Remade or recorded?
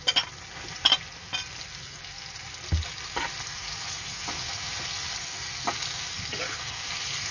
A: recorded